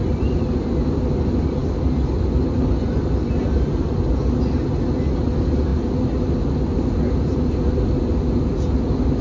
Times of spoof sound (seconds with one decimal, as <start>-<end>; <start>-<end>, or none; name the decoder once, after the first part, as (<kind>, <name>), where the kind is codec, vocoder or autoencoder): none